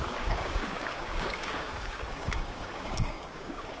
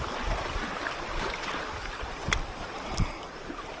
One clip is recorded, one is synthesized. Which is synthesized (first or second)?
first